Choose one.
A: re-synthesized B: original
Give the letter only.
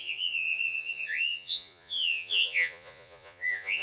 A